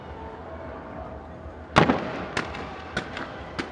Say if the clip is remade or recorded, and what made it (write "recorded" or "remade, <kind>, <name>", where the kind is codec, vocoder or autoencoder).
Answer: recorded